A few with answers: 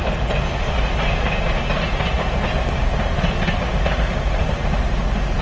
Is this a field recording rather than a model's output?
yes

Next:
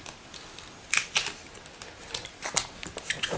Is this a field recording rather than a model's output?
yes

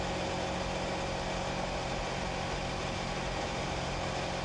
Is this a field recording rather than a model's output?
yes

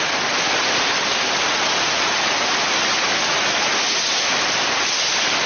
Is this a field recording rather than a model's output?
yes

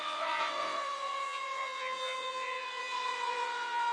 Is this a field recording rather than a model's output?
no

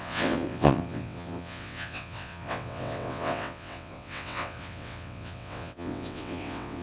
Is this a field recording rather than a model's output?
no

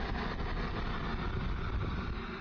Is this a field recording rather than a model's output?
yes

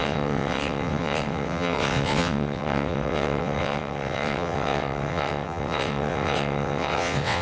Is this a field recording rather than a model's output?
no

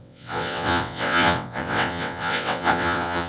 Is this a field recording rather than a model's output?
no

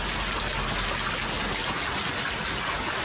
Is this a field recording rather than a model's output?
yes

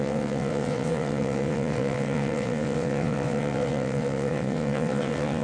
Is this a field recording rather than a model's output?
no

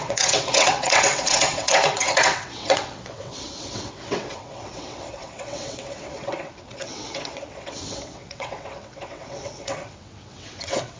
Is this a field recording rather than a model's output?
no